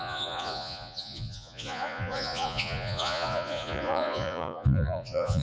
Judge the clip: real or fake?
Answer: fake